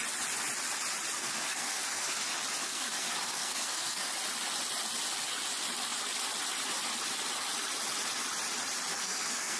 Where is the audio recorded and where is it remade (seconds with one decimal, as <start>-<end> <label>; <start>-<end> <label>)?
0.0-1.2 recorded; 1.2-2.2 remade; 2.2-2.6 recorded; 2.6-4.1 remade; 4.1-8.9 recorded; 8.9-9.6 remade